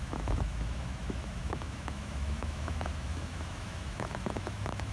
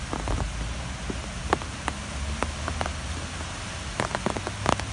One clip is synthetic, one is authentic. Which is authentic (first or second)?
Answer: second